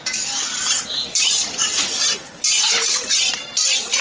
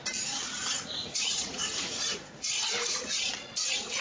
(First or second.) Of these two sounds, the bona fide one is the first